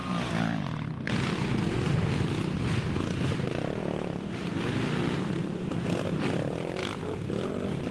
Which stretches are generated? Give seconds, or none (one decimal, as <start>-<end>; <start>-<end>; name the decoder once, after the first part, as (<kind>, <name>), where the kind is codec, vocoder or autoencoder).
none